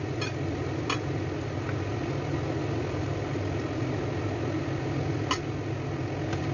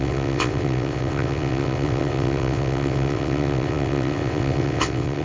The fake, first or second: second